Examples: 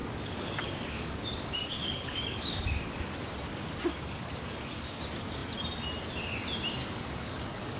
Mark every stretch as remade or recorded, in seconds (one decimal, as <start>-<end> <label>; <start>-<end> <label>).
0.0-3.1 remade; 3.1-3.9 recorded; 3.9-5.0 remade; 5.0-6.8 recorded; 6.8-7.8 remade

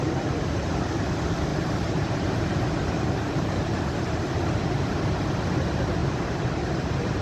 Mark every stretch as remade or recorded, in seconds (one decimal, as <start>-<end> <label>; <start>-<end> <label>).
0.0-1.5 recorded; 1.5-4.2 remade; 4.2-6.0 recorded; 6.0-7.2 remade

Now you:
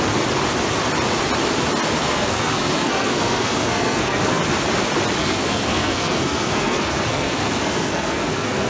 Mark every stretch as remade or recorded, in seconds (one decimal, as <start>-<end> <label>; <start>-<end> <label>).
0.0-2.0 recorded; 2.0-4.4 remade; 4.4-5.2 recorded; 5.2-8.7 remade

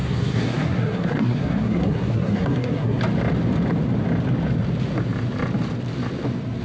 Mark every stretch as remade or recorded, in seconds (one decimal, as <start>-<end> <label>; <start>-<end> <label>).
0.0-3.0 remade; 3.0-6.6 recorded

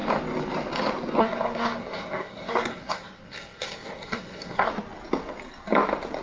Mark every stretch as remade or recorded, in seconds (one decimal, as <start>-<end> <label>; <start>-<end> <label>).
0.0-1.2 recorded; 1.2-4.7 remade; 4.7-6.2 recorded